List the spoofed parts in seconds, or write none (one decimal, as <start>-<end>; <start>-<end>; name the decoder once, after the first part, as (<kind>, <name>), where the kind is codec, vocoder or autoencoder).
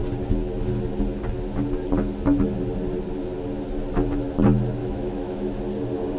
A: 4.8-5.6 (autoencoder, DAC-VAE)